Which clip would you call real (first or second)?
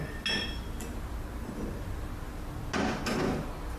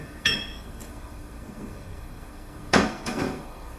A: first